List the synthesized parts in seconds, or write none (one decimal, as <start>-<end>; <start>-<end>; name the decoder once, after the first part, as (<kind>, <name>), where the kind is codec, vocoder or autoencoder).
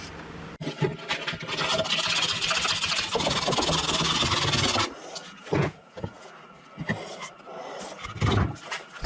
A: 5.2-6.3 (vocoder, Vocos)